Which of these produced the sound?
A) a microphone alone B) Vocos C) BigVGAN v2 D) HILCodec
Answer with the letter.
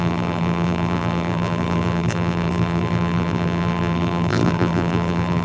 C